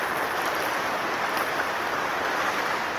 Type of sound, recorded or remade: remade